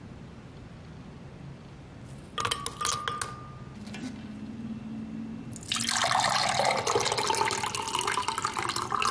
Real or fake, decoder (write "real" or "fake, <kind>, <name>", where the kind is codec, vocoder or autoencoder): real